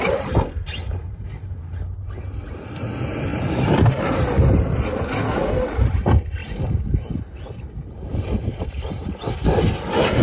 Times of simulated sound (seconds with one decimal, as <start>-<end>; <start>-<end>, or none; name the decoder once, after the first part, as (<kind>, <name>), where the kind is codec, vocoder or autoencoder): none